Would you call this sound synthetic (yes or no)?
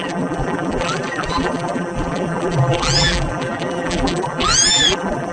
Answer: yes